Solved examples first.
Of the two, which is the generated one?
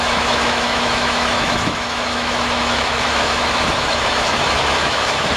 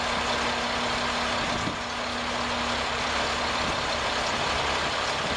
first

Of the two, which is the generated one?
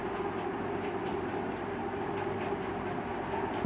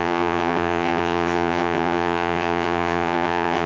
second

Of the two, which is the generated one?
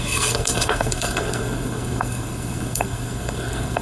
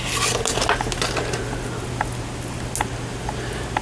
first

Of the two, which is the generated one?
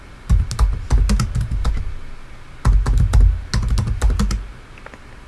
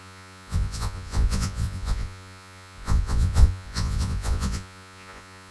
second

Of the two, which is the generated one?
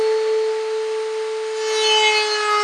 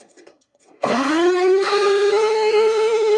second